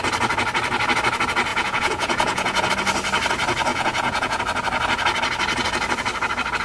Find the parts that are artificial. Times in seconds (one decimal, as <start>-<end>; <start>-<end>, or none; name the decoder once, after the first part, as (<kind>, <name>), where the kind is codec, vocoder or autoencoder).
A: 1.5-2.7 (vocoder, Vocos); 3.7-4.4